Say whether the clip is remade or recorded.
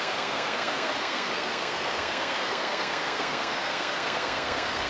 remade